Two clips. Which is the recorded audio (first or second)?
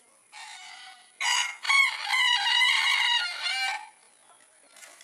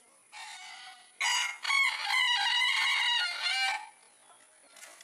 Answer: second